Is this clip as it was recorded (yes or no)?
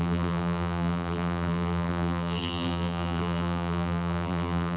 no